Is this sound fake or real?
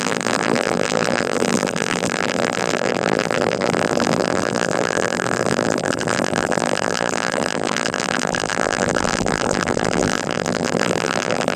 fake